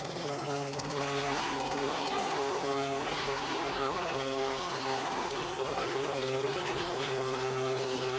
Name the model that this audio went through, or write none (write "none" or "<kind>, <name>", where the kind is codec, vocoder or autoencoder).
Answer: codec, SNAC